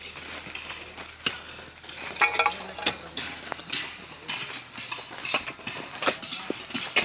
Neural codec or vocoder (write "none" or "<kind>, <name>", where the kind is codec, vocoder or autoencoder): none